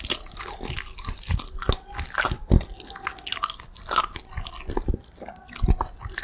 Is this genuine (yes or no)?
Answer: yes